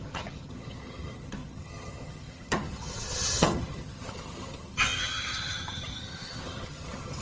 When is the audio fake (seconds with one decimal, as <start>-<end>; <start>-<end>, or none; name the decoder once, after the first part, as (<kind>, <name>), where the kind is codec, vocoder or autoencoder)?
0.0-7.2 (vocoder, HiFi-GAN)